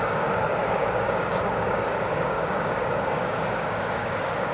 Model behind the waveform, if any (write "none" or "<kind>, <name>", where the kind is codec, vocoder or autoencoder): codec, DAC